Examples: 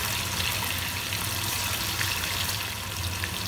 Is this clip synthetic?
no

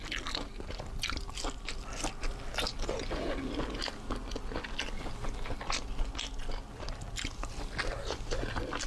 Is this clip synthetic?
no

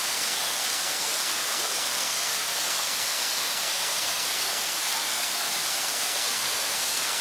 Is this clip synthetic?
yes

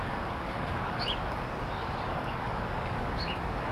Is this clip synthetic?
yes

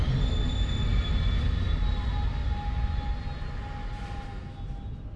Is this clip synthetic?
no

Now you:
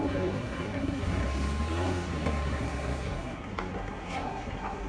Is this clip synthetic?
yes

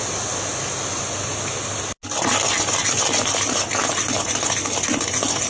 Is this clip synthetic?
no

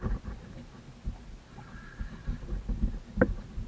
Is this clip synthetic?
no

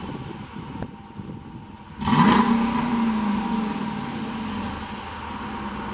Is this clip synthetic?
no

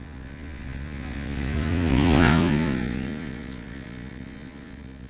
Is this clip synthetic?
yes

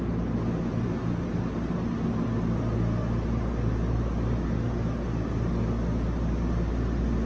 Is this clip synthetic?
no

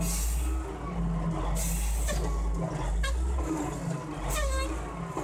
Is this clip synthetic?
no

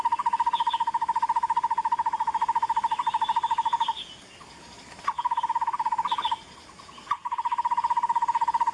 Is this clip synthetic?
no